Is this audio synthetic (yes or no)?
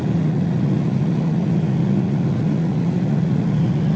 yes